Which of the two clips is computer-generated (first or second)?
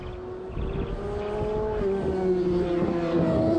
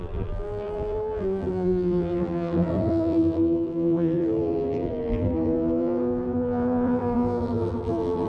second